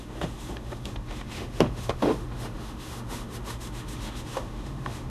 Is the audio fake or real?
fake